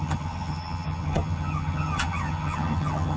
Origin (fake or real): fake